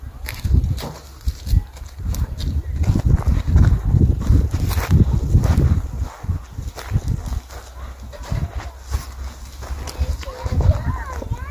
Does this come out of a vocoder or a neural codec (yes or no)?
no